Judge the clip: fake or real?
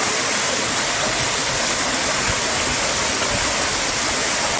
real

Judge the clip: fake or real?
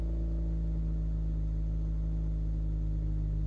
real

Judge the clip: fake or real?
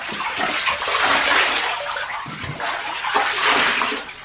real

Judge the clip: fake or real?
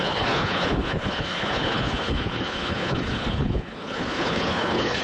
fake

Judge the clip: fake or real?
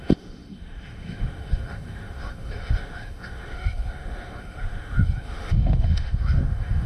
fake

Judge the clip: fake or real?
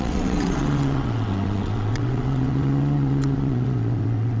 fake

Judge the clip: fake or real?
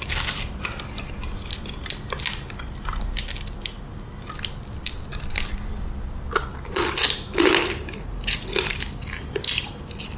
real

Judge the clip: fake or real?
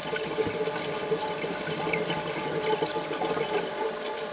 real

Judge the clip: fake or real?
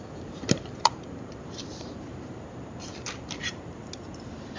fake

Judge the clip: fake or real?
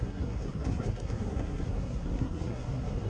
fake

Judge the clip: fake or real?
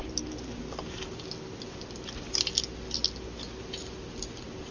real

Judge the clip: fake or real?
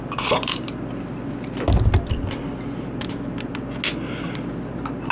real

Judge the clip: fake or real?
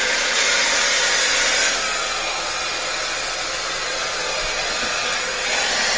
real